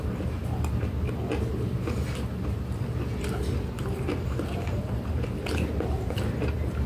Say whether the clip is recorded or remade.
recorded